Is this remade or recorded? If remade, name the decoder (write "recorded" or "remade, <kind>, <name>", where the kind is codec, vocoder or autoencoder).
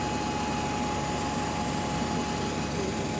recorded